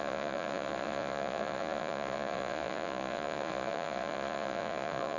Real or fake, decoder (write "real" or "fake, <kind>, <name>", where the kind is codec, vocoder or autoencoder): fake, vocoder, Vocos